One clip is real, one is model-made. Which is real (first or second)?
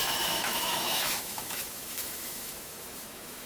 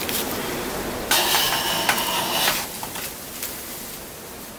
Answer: second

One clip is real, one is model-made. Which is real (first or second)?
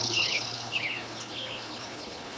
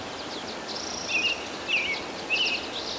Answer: second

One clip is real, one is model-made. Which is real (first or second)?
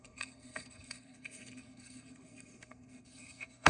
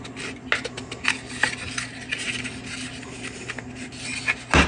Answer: second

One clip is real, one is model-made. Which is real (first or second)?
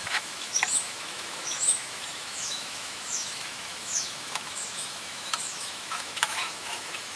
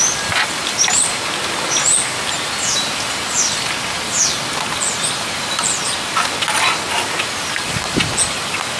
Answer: second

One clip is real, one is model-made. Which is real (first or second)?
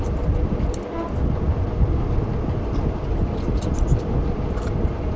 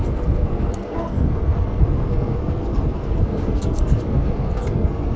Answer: first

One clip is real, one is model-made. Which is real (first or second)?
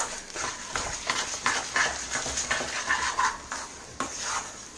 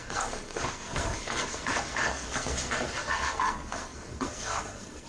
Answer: first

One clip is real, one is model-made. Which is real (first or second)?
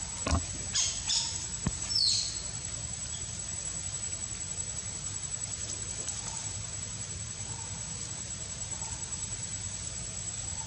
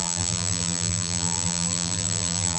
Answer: first